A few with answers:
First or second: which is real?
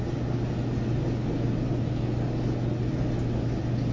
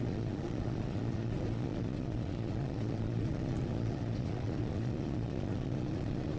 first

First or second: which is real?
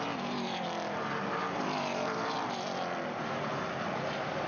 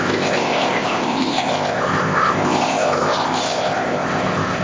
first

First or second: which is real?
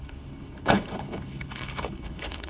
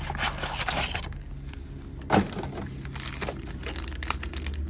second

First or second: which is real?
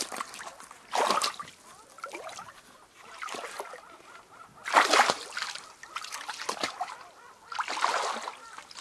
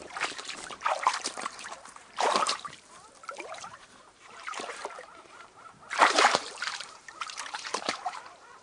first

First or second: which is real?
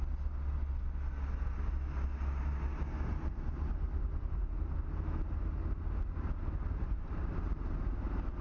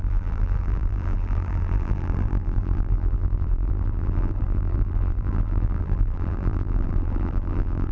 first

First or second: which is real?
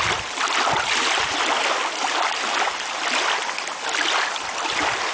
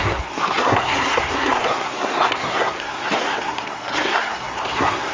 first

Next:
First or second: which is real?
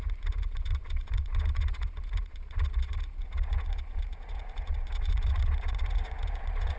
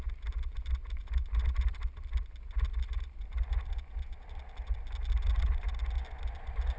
second